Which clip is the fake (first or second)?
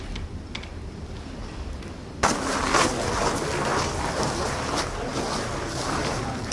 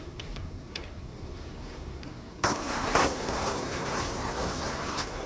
second